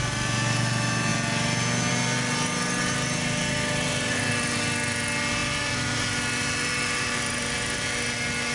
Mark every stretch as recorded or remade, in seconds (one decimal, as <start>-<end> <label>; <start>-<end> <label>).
0.0-8.5 recorded